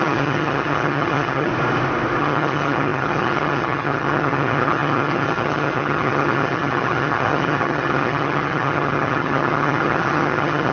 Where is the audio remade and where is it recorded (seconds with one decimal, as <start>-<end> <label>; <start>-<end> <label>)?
0.0-1.5 remade; 1.5-2.2 recorded; 2.2-10.7 remade